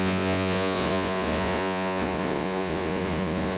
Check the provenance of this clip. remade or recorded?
remade